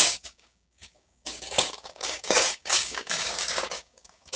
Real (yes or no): no